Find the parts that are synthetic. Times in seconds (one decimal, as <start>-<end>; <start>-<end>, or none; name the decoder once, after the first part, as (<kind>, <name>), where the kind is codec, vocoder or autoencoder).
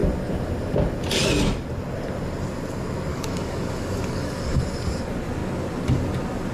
3.1-4.6 (codec, DAC)